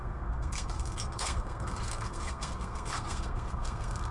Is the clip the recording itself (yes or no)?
no